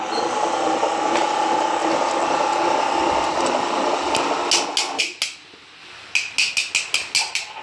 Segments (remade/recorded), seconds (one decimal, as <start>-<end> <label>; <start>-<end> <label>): 0.0-7.6 recorded